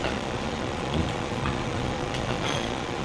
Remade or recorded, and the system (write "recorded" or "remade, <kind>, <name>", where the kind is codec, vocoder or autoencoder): remade, vocoder, Vocos